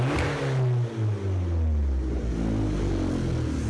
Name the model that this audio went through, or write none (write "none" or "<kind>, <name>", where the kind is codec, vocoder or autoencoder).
none